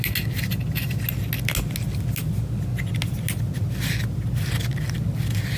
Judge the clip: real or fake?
real